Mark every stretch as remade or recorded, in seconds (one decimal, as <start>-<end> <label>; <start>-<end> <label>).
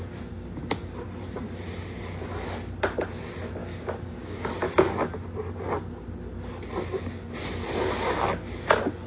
0.0-3.6 recorded; 3.6-4.5 remade; 4.5-9.1 recorded